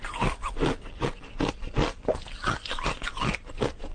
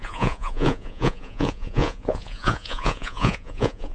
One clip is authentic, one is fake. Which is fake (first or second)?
second